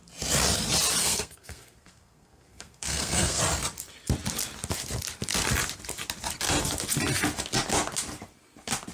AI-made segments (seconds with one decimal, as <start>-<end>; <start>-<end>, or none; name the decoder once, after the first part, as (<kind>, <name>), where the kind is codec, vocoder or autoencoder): 1.0-3.4 (codec, SNAC)